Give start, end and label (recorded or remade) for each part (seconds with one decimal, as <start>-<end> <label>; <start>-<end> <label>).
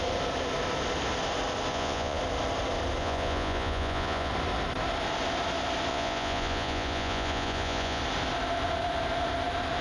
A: 0.0-1.7 recorded; 1.7-2.2 remade; 2.2-3.0 recorded; 3.0-4.3 remade; 4.3-5.9 recorded; 5.9-8.0 remade; 8.0-9.8 recorded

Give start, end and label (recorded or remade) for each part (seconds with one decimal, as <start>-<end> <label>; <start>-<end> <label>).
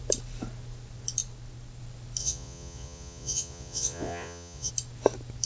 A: 0.0-2.2 recorded; 2.2-4.7 remade; 4.7-5.5 recorded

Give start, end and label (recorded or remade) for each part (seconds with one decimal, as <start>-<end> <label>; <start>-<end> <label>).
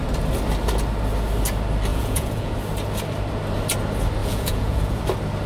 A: 0.0-1.9 recorded; 1.9-2.5 remade; 2.5-4.2 recorded; 4.2-5.0 remade; 5.0-5.5 recorded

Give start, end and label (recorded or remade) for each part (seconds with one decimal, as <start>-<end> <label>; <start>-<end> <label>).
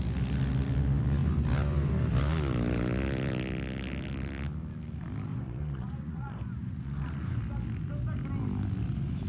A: 0.0-5.3 recorded; 5.3-7.4 remade; 7.4-9.3 recorded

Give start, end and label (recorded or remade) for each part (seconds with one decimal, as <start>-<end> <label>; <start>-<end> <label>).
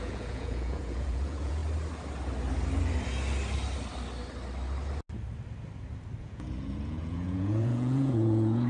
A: 0.0-1.6 remade; 1.6-6.2 recorded; 6.2-8.7 remade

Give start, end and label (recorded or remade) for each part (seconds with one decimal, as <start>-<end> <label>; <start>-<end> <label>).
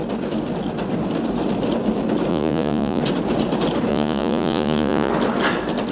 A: 0.0-2.3 recorded; 2.3-3.0 remade; 3.0-3.9 recorded; 3.9-5.1 remade; 5.1-5.9 recorded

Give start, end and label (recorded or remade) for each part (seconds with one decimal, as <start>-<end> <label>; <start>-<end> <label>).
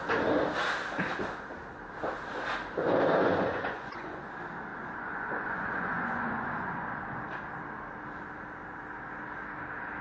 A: 0.0-3.2 recorded; 3.2-4.3 remade; 4.3-4.7 recorded; 4.7-7.2 remade; 7.2-10.0 recorded